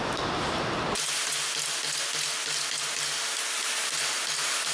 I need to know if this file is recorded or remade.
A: recorded